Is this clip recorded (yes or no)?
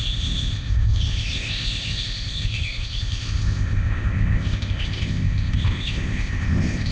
no